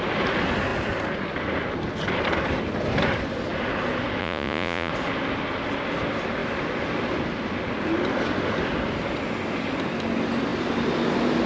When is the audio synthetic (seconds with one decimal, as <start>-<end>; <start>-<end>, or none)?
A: 4.2-4.9